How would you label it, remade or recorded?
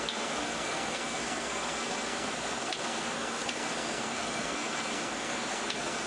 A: remade